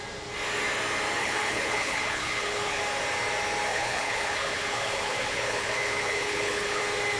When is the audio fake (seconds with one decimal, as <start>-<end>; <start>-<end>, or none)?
1.2-2.8; 3.7-6.8